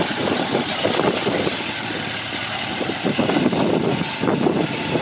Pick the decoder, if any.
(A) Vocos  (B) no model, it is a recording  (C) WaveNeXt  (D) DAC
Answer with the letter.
B